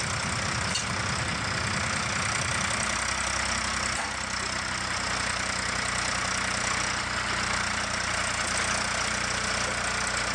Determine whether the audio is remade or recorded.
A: recorded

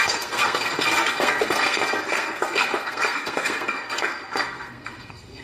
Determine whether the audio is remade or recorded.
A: remade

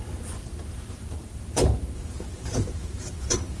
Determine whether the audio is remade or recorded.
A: remade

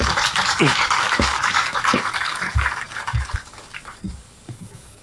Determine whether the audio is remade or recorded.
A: remade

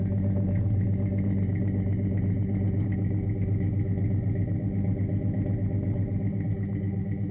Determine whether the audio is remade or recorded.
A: recorded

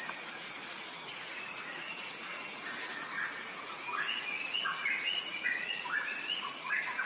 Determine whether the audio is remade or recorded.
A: remade